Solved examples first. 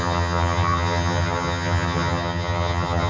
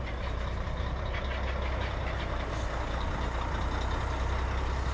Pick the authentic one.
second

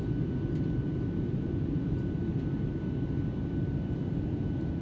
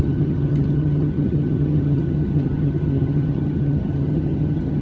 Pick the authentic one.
first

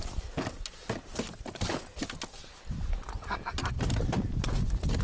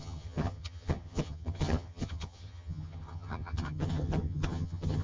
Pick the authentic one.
first